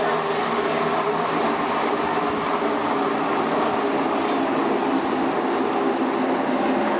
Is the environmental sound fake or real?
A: real